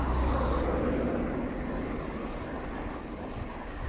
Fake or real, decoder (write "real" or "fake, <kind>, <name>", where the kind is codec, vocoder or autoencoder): real